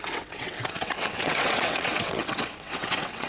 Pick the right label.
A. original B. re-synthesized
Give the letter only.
B